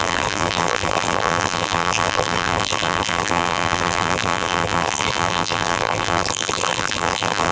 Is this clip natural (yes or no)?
no